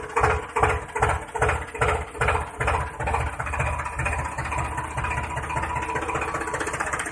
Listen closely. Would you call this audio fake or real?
real